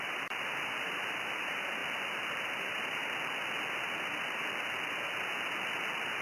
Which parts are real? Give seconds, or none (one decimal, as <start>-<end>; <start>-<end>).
1.8-2.6; 3.0-6.2